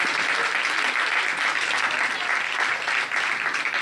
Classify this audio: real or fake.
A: real